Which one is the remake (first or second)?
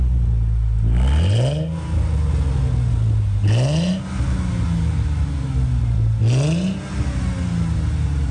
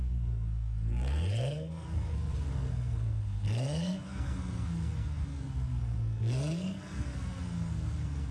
second